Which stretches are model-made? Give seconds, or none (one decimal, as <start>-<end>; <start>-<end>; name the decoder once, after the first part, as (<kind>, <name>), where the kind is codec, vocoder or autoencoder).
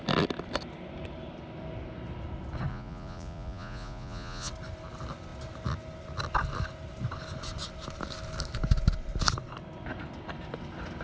2.7-4.5 (vocoder, Vocos)